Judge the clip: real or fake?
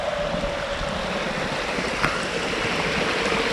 real